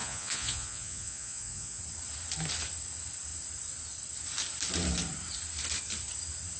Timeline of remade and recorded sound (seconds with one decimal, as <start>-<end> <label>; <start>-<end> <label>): 0.0-1.8 remade; 1.8-6.6 recorded